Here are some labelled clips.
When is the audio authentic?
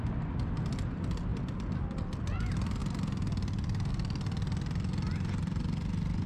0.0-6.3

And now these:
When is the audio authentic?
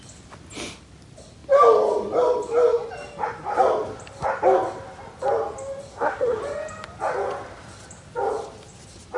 0.0-5.9; 6.4-9.2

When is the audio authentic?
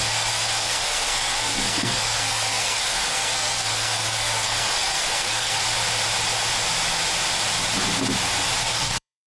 5.6-8.6